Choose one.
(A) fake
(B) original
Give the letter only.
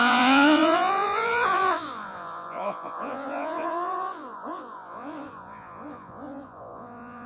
A